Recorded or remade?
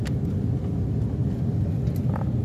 recorded